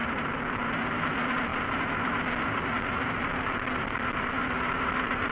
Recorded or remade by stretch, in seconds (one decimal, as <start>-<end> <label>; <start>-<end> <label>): 0.0-5.3 remade